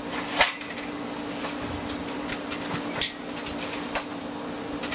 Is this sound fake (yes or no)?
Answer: yes